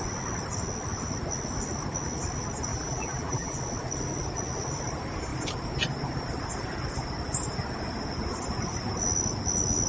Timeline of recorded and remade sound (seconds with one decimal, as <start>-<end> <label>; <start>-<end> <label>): 0.0-2.7 recorded; 2.7-3.6 remade; 3.6-9.9 recorded